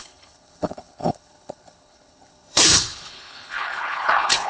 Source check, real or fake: fake